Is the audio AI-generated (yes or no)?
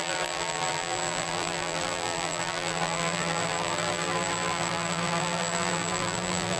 yes